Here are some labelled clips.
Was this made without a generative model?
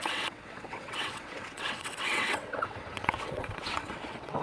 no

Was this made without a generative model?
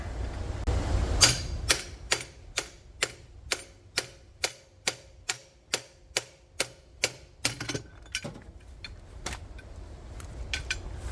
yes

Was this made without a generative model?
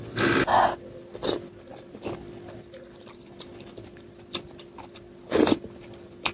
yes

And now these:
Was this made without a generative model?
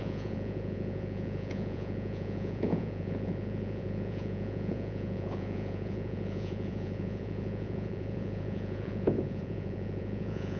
no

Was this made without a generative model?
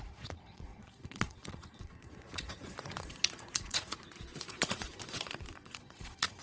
no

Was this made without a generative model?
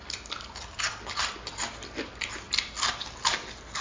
yes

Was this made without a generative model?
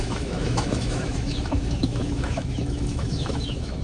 no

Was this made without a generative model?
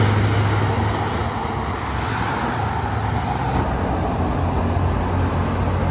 yes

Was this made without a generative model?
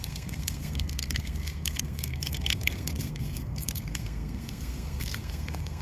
no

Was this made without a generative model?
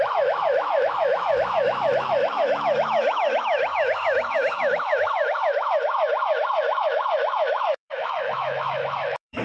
no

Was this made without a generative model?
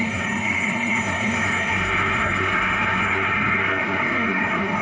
no